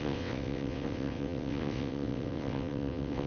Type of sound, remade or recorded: remade